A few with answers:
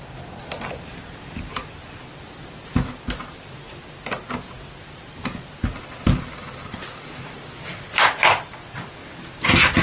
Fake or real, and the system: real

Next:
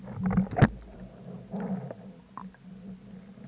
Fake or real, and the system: real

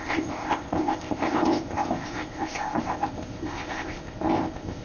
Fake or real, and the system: fake, codec, ZipCodec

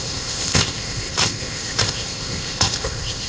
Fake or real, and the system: fake, codec, ZipCodec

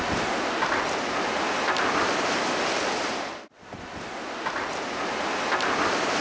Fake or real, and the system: real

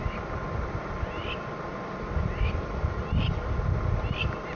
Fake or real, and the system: real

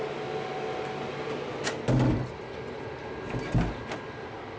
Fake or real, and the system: real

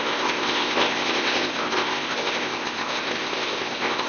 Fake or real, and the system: fake, codec, ZipCodec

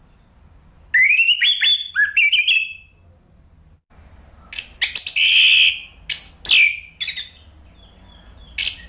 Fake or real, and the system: real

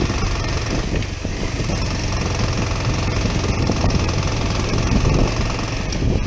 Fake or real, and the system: real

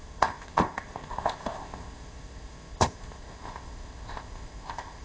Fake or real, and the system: fake, codec, ZipCodec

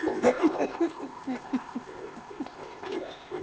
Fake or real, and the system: fake, codec, ZipCodec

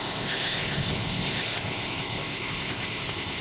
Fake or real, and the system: fake, codec, ZipCodec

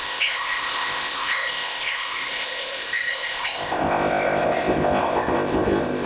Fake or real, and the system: fake, codec, ZipCodec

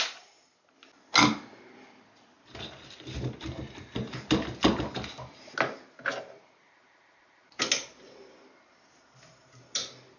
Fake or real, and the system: real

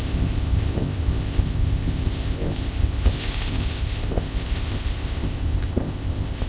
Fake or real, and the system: fake, codec, ZipCodec